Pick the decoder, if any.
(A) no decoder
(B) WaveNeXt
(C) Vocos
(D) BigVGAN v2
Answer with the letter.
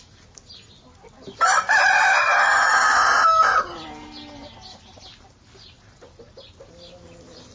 A